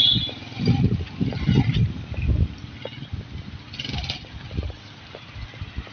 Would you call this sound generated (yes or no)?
no